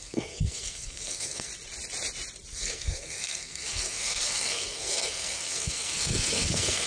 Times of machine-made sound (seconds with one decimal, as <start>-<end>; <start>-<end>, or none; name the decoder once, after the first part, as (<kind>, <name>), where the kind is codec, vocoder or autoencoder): 0.0-1.5 (codec, SNAC); 2.5-6.9